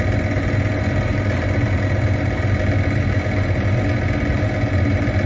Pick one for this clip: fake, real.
real